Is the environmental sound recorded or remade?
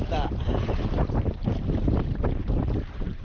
remade